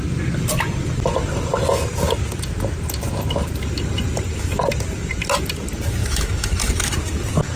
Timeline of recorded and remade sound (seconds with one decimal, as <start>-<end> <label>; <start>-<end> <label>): 0.0-6.0 recorded; 6.0-6.9 remade; 6.9-7.6 recorded